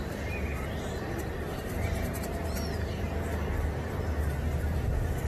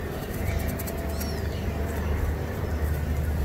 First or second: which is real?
second